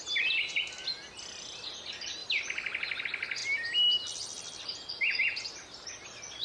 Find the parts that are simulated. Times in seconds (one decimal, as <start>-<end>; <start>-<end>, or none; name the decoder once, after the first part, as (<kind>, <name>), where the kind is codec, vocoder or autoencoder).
none